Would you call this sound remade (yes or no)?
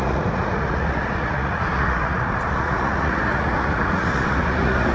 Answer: yes